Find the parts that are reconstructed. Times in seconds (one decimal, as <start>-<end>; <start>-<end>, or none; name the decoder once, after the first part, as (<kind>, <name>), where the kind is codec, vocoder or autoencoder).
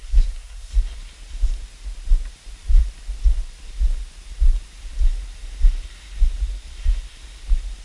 0.0-0.7 (codec, SNAC)